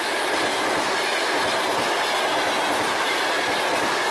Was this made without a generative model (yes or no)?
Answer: yes